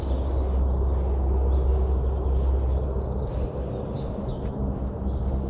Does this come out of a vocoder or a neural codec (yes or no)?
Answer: no